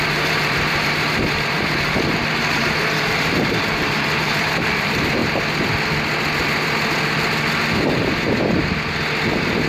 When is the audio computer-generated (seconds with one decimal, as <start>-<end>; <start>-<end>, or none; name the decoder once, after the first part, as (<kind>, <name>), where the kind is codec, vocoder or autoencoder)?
0.0-5.2 (vocoder, BigVGAN v2)